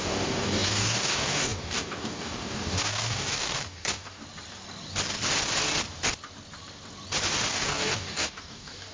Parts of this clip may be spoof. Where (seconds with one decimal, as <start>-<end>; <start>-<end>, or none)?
0.0-4.2; 7.5-8.9